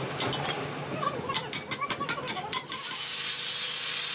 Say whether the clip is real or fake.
fake